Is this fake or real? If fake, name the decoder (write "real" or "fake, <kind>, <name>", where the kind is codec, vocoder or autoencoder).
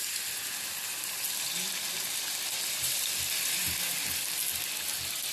fake, vocoder, BigVGAN v2